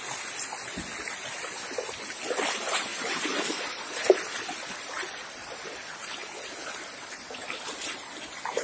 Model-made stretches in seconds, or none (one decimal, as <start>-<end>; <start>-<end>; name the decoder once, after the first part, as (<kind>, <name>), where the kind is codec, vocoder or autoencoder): 0.0-2.9 (vocoder, BigVGAN v2); 3.7-6.2; 6.7-8.6